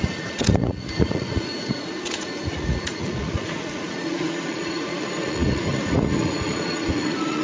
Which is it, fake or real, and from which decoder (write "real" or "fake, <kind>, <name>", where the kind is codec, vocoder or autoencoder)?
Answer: fake, vocoder, Vocos